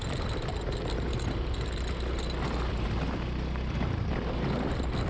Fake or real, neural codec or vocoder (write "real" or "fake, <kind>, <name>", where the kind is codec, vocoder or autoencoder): real